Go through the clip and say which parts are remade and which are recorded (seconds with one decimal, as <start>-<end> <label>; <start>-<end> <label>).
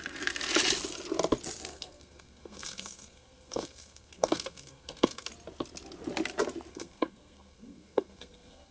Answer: 0.0-1.7 recorded; 1.7-5.3 remade; 5.3-6.7 recorded; 6.7-8.7 remade